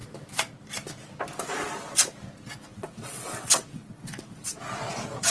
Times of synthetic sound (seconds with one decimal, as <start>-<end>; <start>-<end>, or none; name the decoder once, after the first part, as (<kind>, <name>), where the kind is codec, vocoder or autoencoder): 2.7-4.6 (vocoder, WaveNeXt)